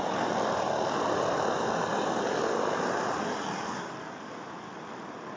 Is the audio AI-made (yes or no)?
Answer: no